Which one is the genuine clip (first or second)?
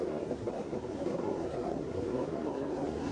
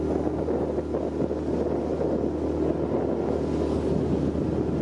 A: second